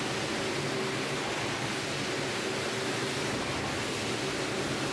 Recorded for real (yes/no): yes